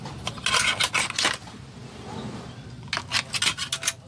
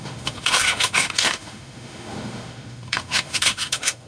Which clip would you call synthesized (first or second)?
second